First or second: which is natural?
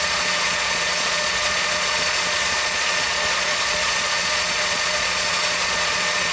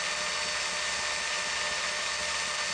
second